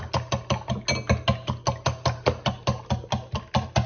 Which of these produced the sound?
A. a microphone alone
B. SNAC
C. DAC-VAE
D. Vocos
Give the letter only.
A